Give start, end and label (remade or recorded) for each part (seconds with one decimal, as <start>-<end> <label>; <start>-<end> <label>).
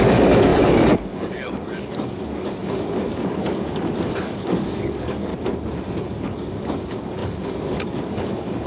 0.0-5.3 remade; 5.3-6.0 recorded; 6.0-8.7 remade